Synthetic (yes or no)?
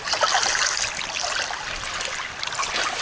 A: no